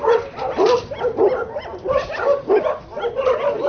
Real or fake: real